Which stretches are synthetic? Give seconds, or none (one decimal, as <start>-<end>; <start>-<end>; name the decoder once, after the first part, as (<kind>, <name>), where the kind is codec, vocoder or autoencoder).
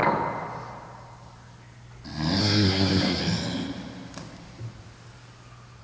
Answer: 2.4-3.2 (codec, SNAC)